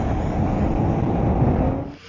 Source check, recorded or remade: recorded